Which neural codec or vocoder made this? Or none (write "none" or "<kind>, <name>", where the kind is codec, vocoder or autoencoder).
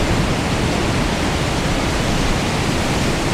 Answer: none